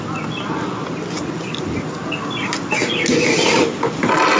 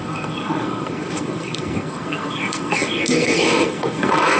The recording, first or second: first